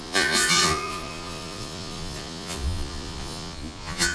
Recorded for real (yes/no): no